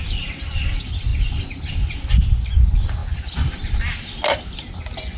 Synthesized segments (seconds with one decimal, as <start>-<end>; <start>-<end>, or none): none

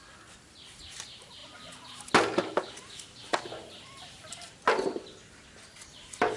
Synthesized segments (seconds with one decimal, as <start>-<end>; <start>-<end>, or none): none

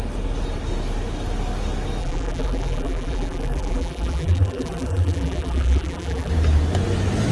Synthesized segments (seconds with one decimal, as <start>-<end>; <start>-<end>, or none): 2.0-6.3

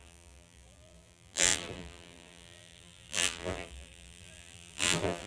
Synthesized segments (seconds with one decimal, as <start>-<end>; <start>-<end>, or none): 0.0-5.3

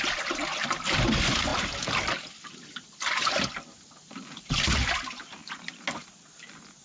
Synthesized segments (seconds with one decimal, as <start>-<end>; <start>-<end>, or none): none

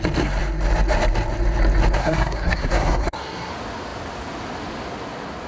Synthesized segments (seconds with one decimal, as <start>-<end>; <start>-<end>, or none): 2.0-3.5

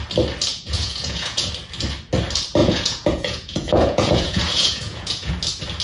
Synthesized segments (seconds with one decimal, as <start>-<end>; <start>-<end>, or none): 0.5-1.5; 2.6-5.3